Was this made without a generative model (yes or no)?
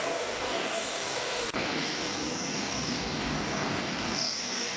no